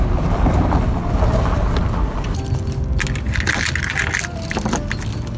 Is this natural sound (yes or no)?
yes